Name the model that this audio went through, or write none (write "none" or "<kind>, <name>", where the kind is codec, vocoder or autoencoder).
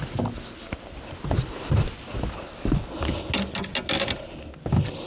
none